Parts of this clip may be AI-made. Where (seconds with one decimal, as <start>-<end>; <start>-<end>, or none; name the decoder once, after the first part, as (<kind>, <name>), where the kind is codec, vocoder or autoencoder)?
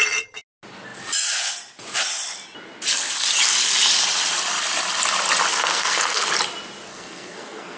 5.5-6.3 (codec, SNAC); 6.9-7.8